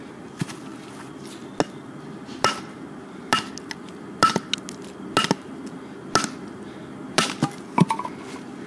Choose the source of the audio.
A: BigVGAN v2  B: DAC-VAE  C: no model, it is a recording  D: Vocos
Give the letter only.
C